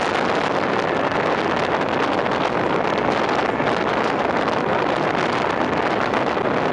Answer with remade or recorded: recorded